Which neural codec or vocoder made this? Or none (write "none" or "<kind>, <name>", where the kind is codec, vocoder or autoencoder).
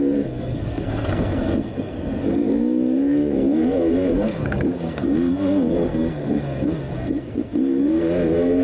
codec, SNAC